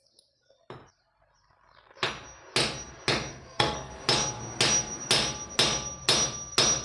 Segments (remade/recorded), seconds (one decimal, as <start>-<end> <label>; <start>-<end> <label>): 0.0-3.3 recorded; 3.3-3.9 remade; 3.9-6.8 recorded